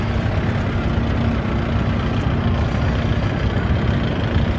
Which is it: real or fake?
real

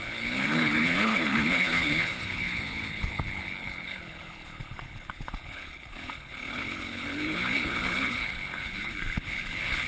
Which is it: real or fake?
fake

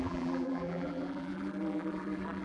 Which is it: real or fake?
fake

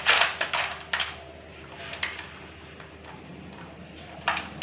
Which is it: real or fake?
real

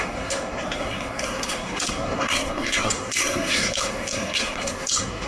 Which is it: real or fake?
fake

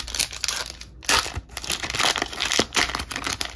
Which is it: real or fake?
real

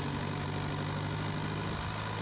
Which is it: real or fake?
real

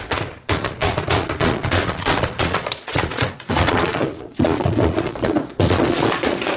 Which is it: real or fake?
fake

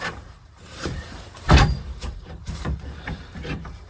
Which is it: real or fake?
fake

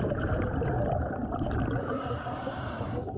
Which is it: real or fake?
fake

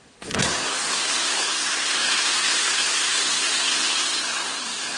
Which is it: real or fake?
fake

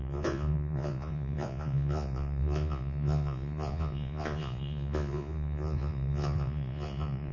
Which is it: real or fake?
fake